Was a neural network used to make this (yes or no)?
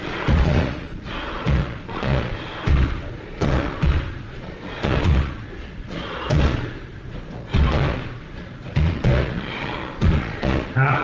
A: yes